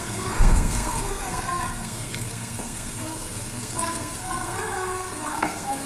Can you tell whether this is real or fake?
fake